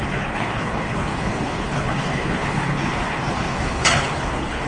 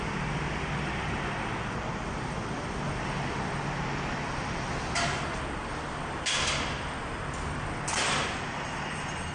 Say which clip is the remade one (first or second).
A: first